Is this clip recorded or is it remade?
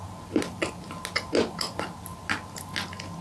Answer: recorded